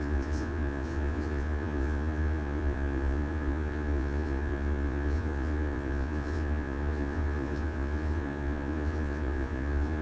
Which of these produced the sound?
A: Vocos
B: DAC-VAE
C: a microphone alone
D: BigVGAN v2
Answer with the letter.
A